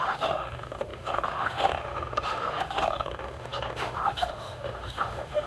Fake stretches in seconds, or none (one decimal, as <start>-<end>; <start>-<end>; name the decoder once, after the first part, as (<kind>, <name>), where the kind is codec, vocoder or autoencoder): 0.0-5.5 (autoencoder, DAC-VAE)